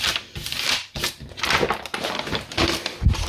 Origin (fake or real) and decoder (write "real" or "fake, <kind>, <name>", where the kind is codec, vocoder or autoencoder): real